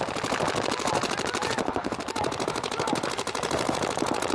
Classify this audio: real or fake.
real